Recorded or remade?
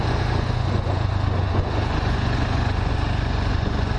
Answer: remade